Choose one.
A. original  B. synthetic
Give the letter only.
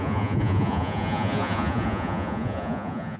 B